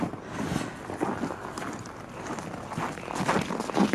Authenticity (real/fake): real